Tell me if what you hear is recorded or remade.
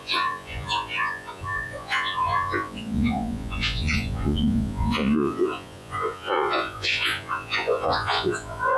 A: remade